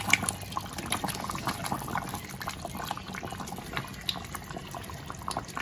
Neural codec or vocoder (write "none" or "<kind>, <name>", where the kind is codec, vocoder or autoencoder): vocoder, BigVGAN v2